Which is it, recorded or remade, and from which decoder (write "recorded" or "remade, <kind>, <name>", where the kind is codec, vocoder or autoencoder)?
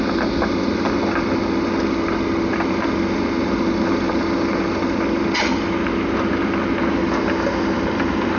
recorded